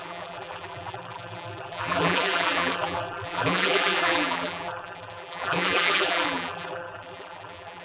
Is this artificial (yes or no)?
yes